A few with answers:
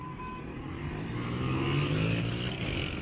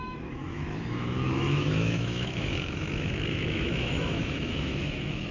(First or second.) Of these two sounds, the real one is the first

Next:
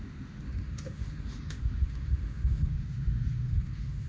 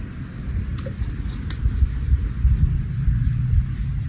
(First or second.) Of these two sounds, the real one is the second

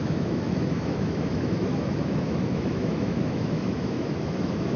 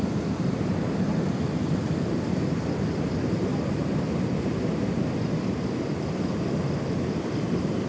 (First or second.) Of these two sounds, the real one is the second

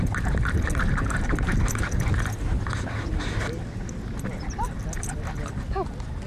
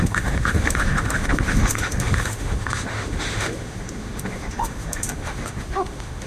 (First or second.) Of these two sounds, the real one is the first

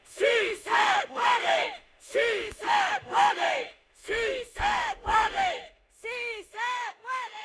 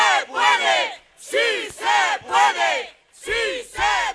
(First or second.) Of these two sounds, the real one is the second